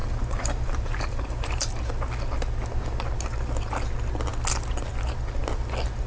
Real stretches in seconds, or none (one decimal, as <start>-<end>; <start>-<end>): 1.8-6.1

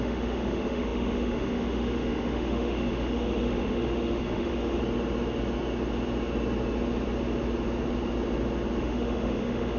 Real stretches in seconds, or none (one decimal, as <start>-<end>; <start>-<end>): 4.8-8.8